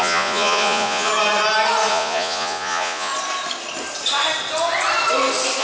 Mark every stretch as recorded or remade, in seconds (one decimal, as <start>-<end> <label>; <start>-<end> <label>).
0.0-1.1 remade; 1.1-1.9 recorded; 1.9-3.1 remade; 3.1-5.6 recorded